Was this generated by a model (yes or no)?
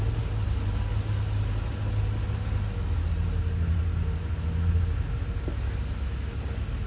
no